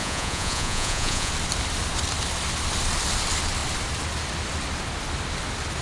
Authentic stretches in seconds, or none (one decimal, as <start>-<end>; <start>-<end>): 1.3-5.8